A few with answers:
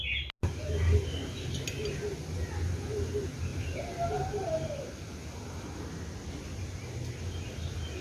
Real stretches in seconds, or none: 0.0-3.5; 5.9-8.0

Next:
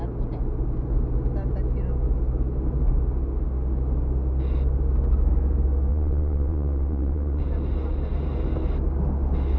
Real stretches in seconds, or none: 0.0-5.9; 7.4-9.6

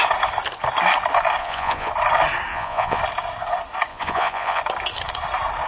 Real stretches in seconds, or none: 0.0-1.4; 1.9-2.5; 3.0-3.9; 4.6-5.7

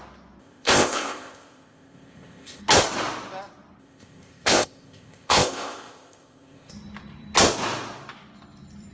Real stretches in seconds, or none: 0.0-0.4; 2.6-3.8; 6.7-8.9